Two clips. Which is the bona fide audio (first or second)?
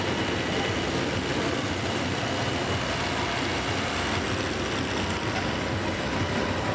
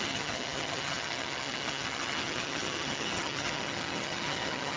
first